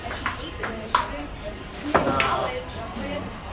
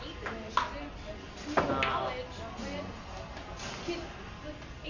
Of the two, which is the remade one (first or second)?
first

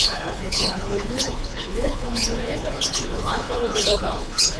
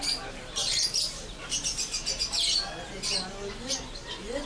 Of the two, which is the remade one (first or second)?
first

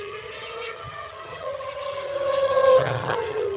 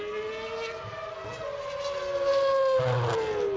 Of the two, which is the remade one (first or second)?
first